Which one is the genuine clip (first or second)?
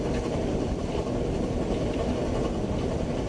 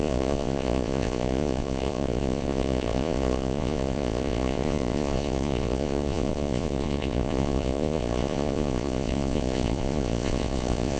first